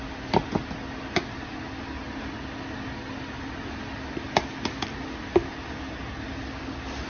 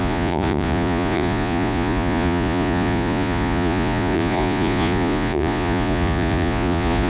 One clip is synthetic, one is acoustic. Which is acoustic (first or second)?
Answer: first